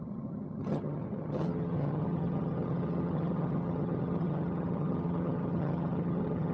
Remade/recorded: remade